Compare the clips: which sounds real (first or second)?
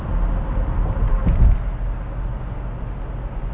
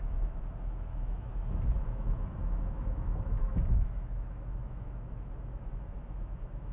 first